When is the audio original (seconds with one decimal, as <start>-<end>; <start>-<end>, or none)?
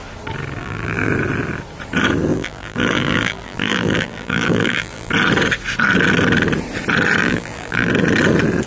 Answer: 0.0-0.6; 1.1-2.3; 5.1-7.2; 7.9-8.7